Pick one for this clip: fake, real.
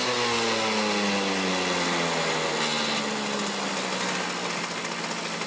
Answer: real